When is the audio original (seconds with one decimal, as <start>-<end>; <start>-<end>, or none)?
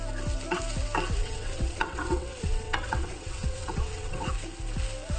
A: 0.0-1.2; 4.3-5.2